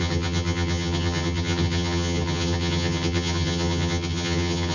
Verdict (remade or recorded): remade